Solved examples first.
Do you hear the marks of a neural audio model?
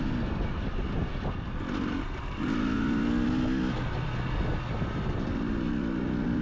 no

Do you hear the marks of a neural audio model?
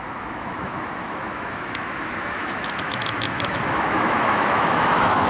yes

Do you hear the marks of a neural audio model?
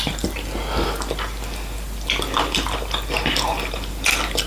yes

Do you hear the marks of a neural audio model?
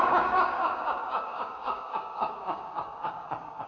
yes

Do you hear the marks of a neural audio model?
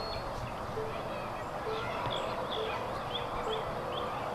no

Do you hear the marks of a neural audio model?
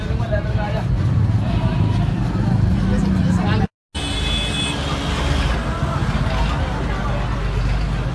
no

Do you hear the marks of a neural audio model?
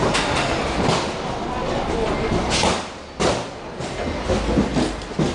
no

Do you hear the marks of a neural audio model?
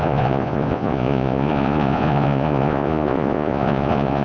yes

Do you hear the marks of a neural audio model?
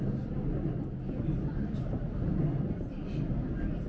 no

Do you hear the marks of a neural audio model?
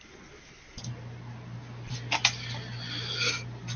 no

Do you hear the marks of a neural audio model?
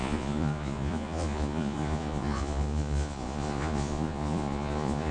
yes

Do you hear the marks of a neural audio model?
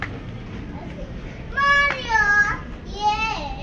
no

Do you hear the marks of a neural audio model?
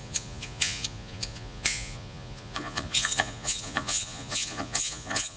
yes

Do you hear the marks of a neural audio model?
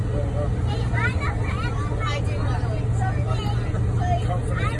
no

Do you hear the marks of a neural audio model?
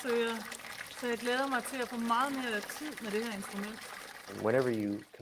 no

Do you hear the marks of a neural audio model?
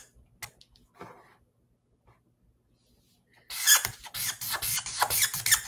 no